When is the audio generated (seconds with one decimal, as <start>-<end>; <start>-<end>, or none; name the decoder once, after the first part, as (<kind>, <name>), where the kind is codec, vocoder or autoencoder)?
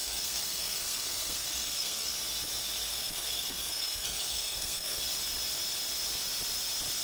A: 0.0-2.1 (codec, SNAC); 2.9-5.0